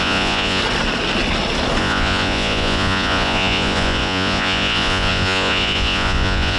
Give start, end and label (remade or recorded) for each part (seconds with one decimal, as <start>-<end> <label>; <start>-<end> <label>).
0.0-0.6 remade; 0.6-1.8 recorded; 1.8-6.6 remade